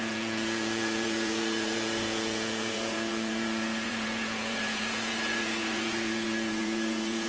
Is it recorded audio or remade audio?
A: remade